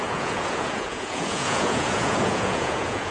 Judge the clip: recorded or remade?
remade